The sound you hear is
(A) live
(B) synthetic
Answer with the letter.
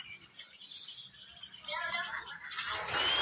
A